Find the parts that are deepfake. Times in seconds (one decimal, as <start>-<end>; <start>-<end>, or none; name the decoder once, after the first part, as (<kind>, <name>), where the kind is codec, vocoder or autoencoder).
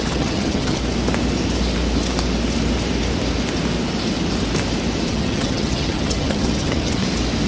0.0-0.8 (vocoder, HiFi-GAN); 5.1-7.0